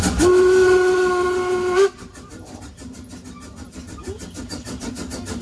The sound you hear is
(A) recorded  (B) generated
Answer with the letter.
A